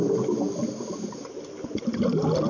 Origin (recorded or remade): recorded